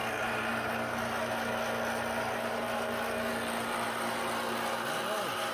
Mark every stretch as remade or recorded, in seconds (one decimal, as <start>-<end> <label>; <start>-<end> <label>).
0.0-5.5 recorded